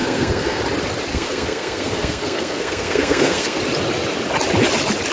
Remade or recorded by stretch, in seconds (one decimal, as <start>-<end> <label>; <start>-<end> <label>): 0.0-0.6 remade; 0.6-1.1 recorded; 1.1-3.6 remade; 3.6-5.1 recorded